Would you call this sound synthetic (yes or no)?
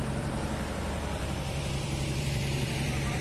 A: yes